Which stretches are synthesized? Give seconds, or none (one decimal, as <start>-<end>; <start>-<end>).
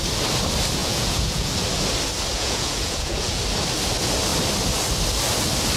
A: 0.8-1.5; 2.3-3.4